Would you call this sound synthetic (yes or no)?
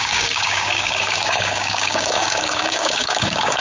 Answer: yes